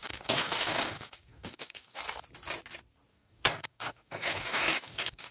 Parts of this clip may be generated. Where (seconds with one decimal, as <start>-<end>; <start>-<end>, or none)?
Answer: 0.0-2.0; 3.1-5.3